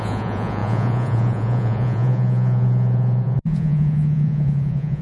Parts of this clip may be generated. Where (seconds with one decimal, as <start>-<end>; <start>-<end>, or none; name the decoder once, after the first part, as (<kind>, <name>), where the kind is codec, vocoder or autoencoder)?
0.0-5.0 (vocoder, Vocos)

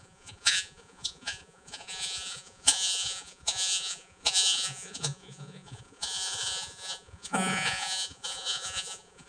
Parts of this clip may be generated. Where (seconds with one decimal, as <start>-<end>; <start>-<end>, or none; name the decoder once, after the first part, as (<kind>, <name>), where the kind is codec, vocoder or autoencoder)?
0.0-9.3 (vocoder, Vocos)

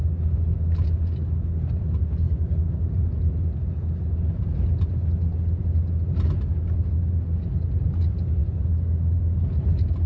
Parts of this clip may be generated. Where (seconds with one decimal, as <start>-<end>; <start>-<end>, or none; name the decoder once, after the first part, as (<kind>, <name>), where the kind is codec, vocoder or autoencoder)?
none

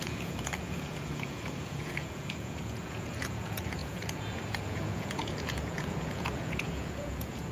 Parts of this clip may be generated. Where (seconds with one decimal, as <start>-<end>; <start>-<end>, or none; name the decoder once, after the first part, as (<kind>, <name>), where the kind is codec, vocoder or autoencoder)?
0.0-7.5 (vocoder, Vocos)

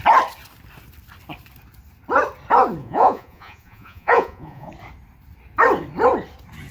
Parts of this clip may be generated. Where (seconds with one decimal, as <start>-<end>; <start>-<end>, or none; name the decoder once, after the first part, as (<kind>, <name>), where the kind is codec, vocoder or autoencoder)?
2.8-4.7 (vocoder, Vocos)

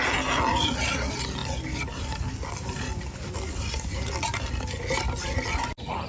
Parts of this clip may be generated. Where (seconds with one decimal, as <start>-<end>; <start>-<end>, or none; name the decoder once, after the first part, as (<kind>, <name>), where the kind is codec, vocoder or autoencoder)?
none

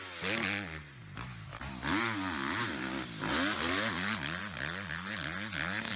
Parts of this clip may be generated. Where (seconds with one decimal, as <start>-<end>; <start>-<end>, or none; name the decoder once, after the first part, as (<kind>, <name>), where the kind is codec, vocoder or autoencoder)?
none